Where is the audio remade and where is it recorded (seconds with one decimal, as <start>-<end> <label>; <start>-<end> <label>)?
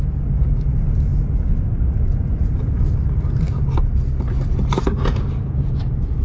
0.0-6.2 recorded